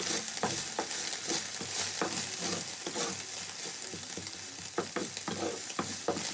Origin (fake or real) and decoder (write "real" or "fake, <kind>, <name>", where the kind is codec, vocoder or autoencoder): real